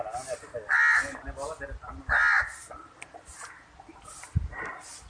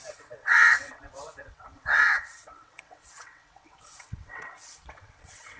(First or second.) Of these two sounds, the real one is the first